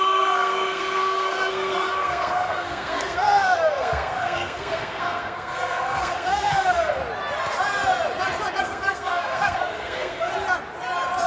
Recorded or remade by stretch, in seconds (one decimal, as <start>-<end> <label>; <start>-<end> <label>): 0.0-7.0 remade; 7.0-8.6 recorded; 8.6-10.3 remade; 10.3-11.3 recorded